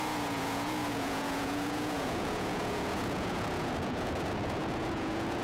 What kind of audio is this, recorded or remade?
remade